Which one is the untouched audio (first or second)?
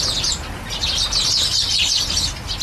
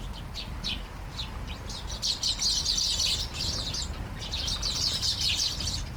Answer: first